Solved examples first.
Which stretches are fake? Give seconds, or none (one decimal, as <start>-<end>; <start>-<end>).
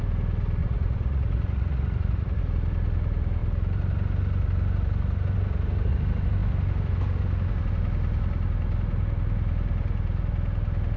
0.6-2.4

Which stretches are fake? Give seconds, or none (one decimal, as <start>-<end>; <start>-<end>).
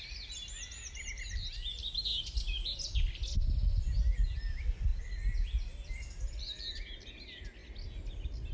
none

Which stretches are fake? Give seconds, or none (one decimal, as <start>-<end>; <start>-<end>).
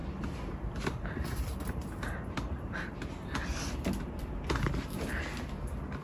0.0-3.6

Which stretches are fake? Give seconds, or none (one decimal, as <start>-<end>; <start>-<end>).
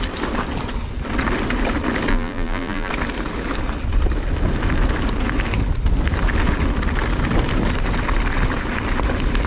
2.1-2.9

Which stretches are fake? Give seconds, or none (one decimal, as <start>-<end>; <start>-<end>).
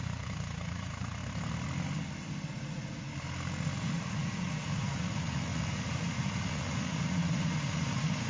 0.0-1.2; 2.5-3.1; 3.8-8.3